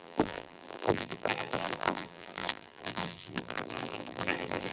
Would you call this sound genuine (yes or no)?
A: no